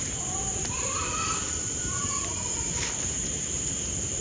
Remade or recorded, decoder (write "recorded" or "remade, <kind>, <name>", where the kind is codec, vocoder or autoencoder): remade, vocoder, BigVGAN v2